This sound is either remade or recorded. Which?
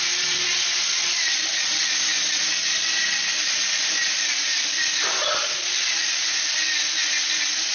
recorded